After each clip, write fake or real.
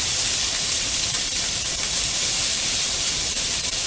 fake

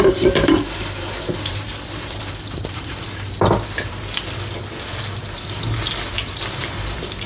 fake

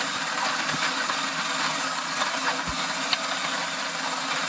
real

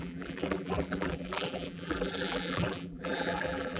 fake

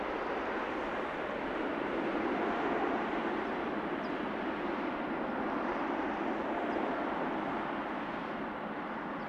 fake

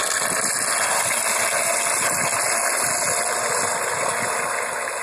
real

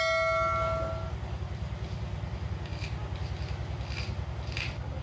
real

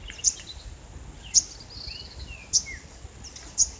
real